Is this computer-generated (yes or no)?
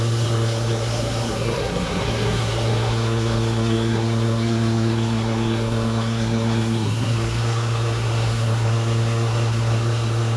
yes